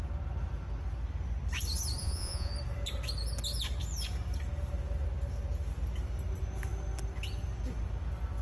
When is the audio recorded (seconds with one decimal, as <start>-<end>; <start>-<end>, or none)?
0.0-2.0; 2.5-8.4